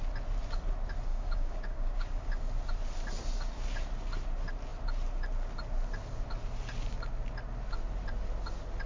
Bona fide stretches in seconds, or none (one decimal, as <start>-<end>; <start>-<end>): 0.0-1.1; 2.3-8.9